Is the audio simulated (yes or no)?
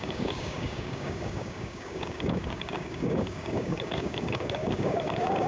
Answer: yes